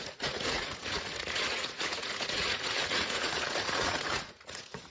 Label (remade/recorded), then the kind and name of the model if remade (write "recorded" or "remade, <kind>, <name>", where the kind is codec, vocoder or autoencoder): remade, vocoder, Vocos